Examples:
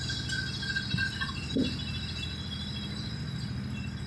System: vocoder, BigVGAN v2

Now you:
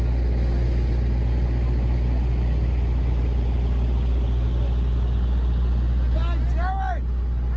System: none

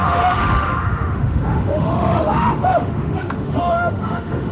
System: autoencoder, DAC-VAE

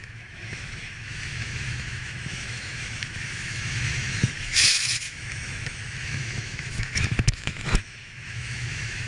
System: autoencoder, DAC-VAE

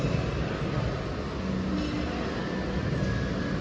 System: none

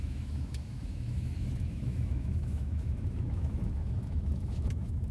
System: autoencoder, DAC-VAE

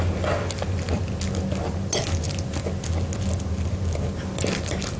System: none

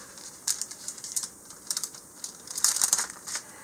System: vocoder, BigVGAN v2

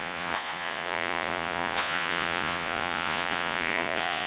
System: vocoder, Vocos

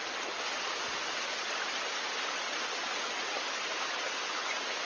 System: none